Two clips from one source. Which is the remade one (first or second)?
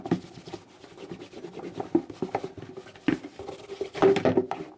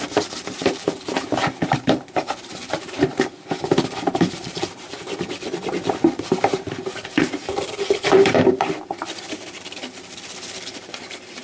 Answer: second